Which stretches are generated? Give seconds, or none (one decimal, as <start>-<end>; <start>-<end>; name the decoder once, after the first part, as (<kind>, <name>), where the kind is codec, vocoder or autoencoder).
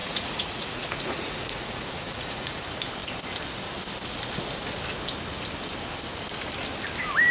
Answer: 0.0-2.6 (vocoder, Vocos)